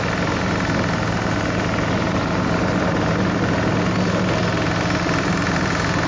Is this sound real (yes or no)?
yes